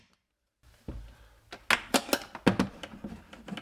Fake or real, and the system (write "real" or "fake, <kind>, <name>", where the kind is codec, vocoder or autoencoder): real